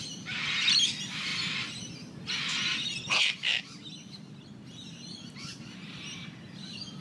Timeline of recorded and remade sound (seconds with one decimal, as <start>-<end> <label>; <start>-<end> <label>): 0.0-1.3 remade; 1.3-2.3 recorded; 2.3-3.5 remade; 3.5-6.4 recorded; 6.4-7.0 remade